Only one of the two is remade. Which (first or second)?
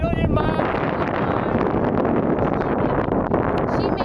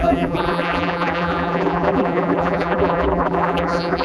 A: second